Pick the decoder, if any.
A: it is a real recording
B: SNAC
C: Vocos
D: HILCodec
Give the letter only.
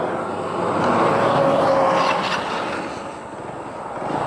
A